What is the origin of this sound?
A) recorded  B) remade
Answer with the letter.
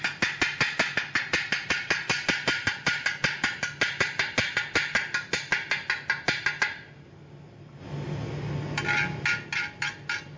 A